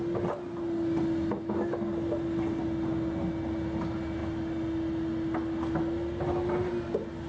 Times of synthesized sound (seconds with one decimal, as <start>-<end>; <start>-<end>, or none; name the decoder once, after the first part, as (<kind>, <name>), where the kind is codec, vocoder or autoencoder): none